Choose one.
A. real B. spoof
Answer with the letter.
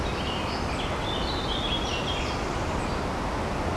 A